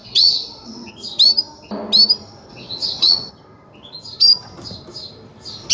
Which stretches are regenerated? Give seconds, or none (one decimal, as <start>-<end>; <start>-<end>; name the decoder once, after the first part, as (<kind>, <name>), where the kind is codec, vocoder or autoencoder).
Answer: 0.0-0.9 (vocoder, WaveNeXt); 2.5-3.3